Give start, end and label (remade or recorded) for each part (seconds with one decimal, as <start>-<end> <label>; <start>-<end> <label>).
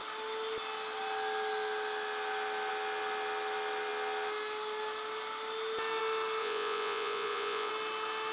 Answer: 0.0-6.4 recorded; 6.4-7.7 remade; 7.7-8.3 recorded